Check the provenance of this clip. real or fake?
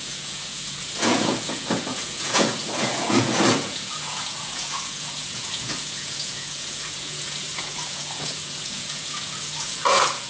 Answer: fake